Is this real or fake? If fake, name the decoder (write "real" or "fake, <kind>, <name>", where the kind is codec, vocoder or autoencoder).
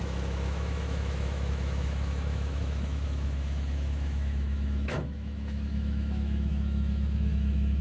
fake, autoencoder, DAC-VAE